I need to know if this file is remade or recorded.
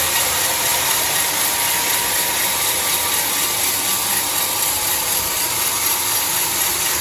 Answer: remade